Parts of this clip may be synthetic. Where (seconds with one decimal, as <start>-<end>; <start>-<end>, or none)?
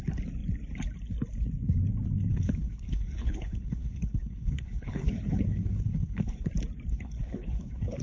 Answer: 2.3-6.5; 6.9-8.0